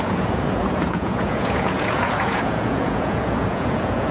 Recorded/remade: remade